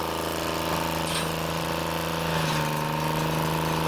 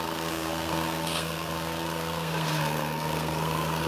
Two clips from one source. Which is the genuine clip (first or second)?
first